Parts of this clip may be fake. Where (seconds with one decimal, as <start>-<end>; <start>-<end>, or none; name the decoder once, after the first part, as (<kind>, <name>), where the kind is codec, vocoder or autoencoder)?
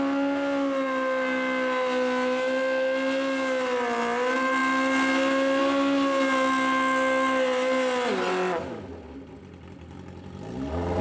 none